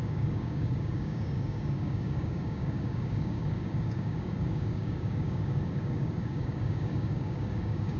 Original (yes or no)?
no